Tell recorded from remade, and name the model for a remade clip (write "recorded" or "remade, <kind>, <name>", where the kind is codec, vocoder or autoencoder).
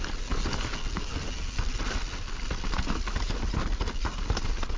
recorded